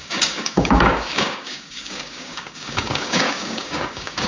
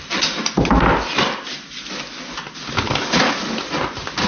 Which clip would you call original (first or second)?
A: second